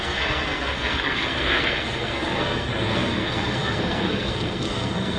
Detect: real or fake fake